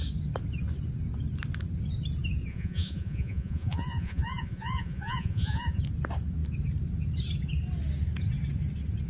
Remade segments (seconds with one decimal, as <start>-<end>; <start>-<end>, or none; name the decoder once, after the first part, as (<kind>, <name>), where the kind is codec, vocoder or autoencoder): 2.5-5.8 (vocoder, Vocos)